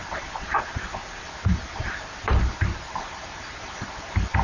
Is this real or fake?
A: fake